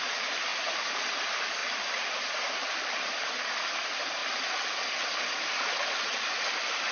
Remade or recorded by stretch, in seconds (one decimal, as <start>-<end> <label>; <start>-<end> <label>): 0.0-0.5 remade; 0.5-1.2 recorded; 1.2-4.2 remade; 4.2-5.8 recorded; 5.8-6.9 remade